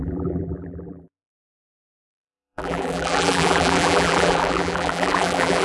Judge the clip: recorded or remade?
remade